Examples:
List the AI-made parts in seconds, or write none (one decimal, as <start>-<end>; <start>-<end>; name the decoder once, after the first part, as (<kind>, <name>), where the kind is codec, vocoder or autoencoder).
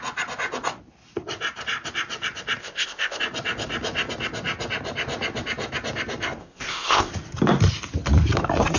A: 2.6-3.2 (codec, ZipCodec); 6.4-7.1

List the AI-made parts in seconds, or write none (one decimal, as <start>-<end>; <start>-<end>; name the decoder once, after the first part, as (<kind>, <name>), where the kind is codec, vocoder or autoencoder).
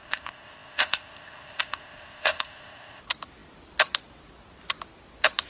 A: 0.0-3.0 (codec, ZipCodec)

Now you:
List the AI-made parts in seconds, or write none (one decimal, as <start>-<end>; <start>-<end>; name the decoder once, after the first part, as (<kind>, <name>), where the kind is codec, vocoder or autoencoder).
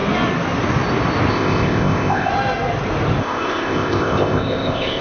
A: 1.3-2.3 (codec, ZipCodec); 3.2-5.0